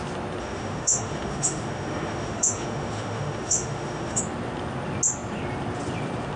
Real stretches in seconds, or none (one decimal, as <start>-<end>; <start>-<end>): 0.0-0.4; 4.2-6.4